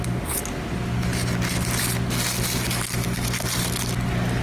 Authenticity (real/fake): real